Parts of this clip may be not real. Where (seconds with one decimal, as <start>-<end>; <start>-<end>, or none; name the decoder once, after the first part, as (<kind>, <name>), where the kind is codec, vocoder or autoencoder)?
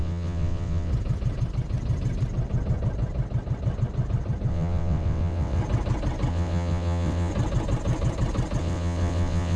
0.0-0.9 (vocoder, WaveNeXt); 4.5-5.6; 6.3-7.3; 8.6-9.6